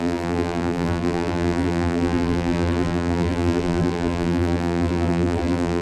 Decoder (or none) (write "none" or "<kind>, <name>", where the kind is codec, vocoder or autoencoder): vocoder, BigVGAN v2